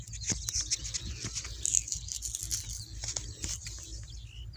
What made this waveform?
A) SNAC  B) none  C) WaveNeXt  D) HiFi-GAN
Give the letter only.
B